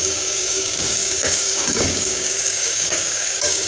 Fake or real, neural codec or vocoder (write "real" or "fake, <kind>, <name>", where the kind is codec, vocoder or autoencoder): fake, codec, DAC